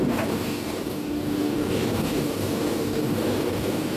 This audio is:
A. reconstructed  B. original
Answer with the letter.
A